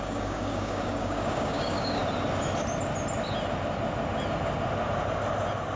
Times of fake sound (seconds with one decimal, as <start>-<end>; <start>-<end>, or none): 0.0-2.0